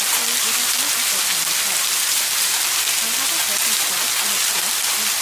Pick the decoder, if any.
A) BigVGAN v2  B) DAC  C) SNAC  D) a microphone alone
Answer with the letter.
D